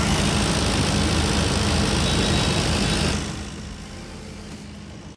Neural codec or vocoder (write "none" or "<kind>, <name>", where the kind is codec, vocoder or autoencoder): none